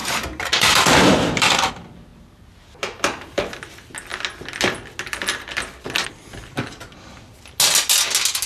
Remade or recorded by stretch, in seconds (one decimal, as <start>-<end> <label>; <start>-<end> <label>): 0.0-1.7 remade; 1.7-8.5 recorded